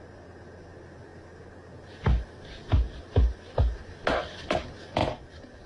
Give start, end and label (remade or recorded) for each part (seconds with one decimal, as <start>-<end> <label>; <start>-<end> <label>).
0.0-5.7 recorded